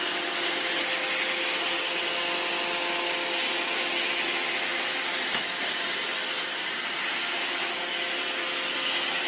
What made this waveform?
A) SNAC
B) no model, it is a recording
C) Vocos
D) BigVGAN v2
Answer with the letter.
B